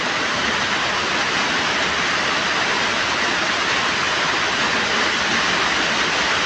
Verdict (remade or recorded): recorded